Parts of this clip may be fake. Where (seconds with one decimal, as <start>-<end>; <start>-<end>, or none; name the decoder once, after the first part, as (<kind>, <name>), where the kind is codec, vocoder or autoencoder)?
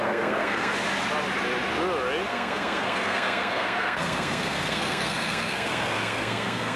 0.0-0.7 (codec, SNAC); 2.3-6.8